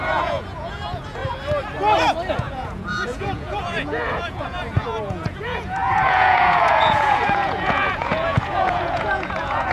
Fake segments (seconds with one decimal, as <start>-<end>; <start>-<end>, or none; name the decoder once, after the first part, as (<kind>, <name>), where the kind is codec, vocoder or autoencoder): 0.0-1.2 (vocoder, Vocos); 2.3-9.7